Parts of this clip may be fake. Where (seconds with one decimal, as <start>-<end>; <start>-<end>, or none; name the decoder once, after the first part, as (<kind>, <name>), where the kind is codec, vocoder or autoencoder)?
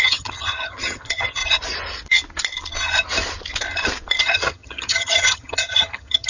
0.0-1.4 (vocoder, HiFi-GAN); 4.2-6.3